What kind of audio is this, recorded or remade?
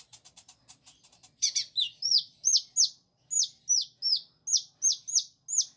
recorded